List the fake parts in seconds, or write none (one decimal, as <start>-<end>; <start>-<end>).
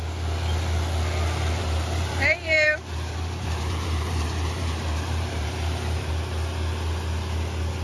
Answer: 1.6-6.1